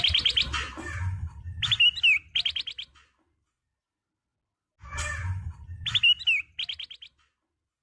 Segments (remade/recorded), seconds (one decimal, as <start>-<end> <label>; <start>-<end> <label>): 0.0-7.8 recorded